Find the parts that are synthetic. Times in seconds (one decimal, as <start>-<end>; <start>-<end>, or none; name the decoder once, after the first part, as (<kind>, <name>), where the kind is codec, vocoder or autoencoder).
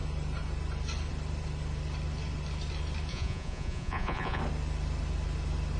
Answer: 3.1-4.4 (vocoder, Vocos)